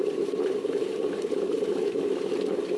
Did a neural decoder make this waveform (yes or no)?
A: yes